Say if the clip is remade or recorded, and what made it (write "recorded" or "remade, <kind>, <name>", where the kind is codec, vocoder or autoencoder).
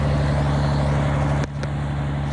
recorded